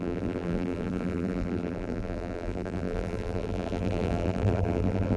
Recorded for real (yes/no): no